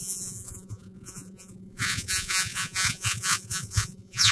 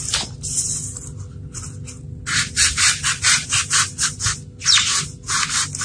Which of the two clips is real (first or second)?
second